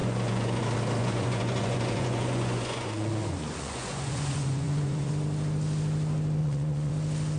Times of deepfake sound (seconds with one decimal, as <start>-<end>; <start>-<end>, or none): 0.0-0.6; 1.0-5.1; 6.4-6.9